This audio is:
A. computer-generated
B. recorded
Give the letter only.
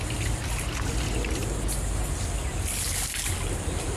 B